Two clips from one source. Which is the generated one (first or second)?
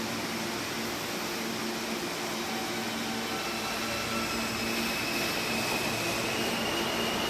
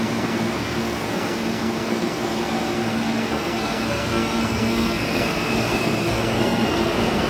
second